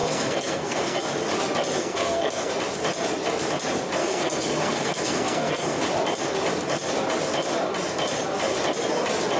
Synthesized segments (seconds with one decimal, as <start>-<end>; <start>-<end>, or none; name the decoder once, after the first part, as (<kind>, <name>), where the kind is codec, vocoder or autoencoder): 0.0-1.0 (codec, SNAC); 1.8-2.5; 4.0-5.8